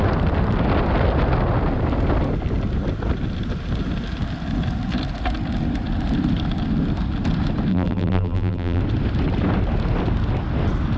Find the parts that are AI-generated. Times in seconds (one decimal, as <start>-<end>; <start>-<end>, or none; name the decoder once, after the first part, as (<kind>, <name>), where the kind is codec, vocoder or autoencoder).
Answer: 7.7-8.8 (vocoder, BigVGAN v2)